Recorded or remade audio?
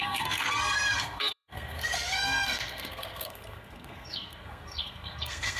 remade